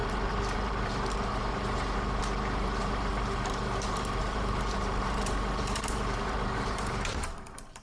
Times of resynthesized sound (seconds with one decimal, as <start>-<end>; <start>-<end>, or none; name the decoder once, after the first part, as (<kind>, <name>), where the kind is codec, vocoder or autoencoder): 0.0-7.8 (vocoder, BigVGAN v2)